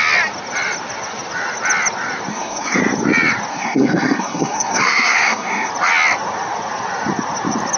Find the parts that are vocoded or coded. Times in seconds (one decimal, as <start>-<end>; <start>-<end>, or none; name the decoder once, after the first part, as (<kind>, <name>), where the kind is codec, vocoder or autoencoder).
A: 2.3-2.8 (codec, SNAC); 3.5-5.7

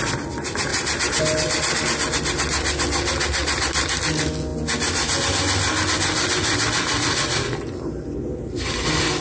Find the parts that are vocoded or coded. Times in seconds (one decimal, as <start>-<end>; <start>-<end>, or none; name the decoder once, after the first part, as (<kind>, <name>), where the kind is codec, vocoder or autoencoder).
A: none

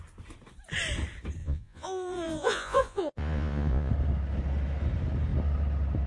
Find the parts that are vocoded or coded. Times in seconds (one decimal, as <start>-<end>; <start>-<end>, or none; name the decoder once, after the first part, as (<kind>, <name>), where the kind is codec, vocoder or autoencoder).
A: 1.4-3.9 (vocoder, Vocos)

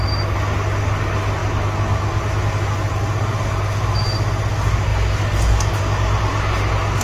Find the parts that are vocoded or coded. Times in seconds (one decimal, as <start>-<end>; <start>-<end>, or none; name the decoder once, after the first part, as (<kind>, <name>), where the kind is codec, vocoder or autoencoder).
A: none

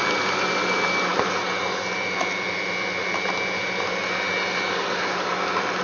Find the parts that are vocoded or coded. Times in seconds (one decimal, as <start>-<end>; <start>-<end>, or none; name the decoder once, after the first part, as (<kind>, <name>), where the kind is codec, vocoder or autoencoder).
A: none

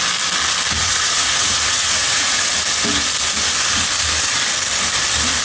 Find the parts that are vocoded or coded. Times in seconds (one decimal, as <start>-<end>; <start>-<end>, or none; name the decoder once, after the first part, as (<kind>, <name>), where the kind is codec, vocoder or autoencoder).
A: 0.8-2.5 (vocoder, Vocos)

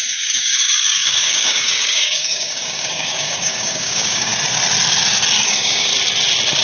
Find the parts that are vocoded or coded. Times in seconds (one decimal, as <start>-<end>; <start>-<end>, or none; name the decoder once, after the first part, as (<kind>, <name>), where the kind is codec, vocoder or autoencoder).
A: 0.0-4.3 (codec, DAC); 5.4-5.9